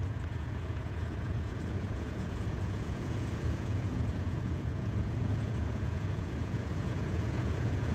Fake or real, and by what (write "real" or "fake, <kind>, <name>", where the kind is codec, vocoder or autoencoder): fake, vocoder, Vocos